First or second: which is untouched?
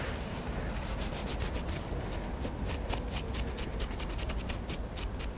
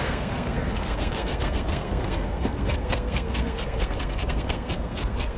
first